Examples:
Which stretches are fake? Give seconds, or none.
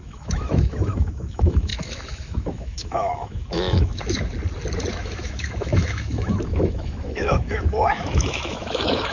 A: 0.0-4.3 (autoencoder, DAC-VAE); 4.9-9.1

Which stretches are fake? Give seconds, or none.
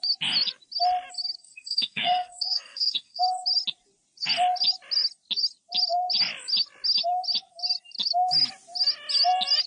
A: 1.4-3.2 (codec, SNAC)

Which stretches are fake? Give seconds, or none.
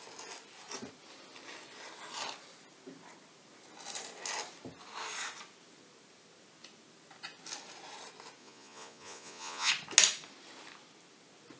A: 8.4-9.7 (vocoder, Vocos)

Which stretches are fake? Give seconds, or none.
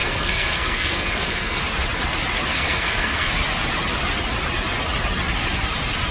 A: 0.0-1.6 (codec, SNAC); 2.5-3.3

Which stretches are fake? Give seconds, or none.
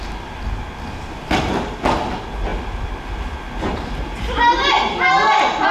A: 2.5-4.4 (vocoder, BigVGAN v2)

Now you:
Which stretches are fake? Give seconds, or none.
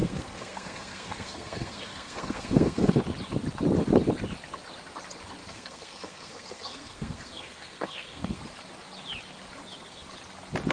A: 0.0-3.0 (codec, SNAC); 5.4-8.4